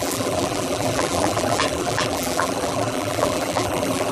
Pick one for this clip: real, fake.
fake